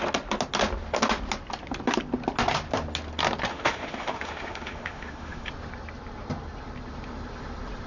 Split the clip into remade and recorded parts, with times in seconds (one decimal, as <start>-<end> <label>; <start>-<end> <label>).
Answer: 0.0-3.5 recorded; 3.5-5.5 remade; 5.5-7.9 recorded